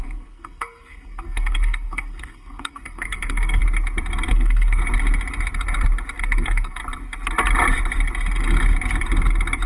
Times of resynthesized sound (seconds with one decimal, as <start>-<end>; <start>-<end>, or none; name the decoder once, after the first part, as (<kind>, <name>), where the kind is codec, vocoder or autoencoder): 0.0-3.6 (codec, SNAC); 4.3-4.8; 6.2-6.8